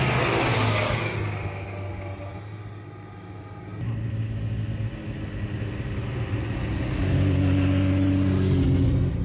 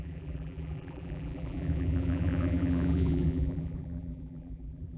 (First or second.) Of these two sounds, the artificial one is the second